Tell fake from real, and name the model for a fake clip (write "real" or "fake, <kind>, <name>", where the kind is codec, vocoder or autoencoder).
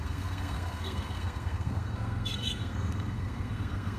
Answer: fake, codec, SNAC